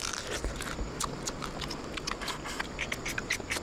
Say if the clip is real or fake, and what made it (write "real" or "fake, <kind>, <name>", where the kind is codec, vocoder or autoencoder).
real